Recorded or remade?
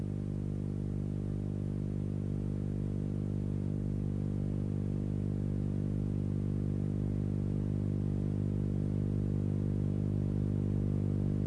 recorded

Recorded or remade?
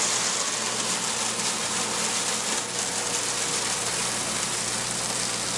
recorded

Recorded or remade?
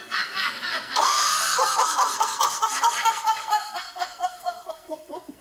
remade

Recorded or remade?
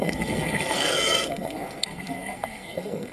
remade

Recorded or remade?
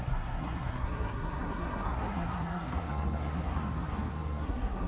remade